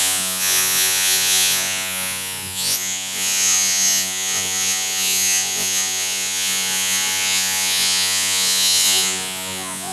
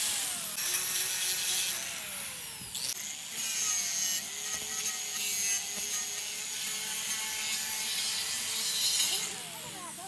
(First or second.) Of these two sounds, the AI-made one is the first